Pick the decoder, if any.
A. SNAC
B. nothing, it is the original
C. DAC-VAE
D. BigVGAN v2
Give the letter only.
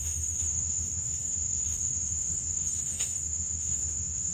C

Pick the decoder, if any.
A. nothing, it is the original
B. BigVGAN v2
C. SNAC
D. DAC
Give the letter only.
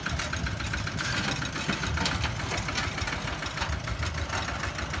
A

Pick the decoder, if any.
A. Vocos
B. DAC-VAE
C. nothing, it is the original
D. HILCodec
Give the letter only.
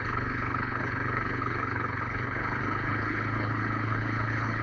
D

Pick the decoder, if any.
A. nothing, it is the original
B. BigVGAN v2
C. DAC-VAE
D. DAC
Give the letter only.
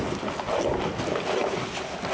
A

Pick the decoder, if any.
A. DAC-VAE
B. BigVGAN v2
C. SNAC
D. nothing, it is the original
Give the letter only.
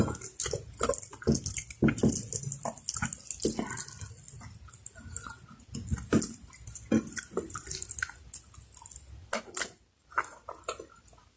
D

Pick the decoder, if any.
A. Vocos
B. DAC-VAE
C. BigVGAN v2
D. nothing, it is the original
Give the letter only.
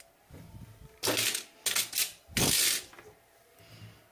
D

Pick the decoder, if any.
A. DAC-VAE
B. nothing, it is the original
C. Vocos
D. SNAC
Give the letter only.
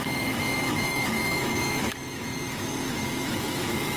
A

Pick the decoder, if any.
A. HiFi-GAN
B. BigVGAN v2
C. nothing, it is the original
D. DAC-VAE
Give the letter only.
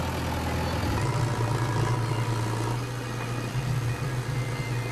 C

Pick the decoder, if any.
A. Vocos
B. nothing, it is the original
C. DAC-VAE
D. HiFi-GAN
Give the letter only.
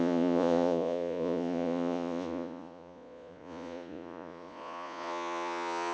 A